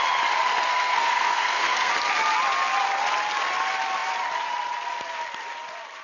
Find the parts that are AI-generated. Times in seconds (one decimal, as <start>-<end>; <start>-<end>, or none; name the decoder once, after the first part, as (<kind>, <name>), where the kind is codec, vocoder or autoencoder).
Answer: 0.7-1.9 (codec, SNAC)